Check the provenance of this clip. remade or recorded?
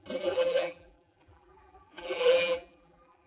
remade